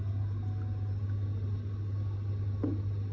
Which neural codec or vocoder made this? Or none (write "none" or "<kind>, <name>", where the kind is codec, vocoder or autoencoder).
none